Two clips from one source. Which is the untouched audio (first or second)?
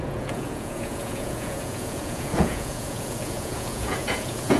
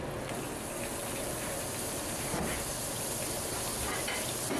second